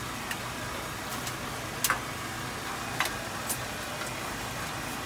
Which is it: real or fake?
real